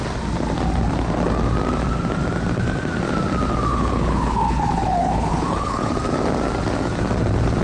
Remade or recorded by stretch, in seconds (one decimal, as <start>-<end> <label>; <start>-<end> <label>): 0.0-3.7 recorded; 3.7-5.9 remade; 5.9-7.6 recorded